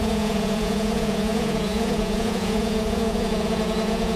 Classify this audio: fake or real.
fake